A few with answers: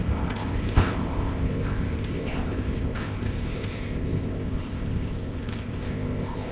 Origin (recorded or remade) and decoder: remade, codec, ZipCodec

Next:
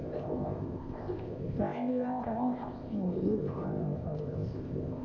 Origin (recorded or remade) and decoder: remade, codec, ZipCodec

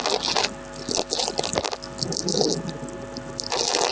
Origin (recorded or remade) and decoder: recorded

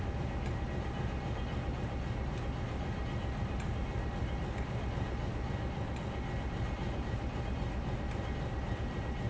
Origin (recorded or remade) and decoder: recorded